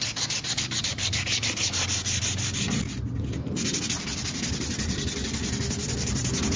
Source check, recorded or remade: remade